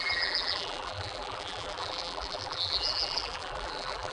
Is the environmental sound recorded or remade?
remade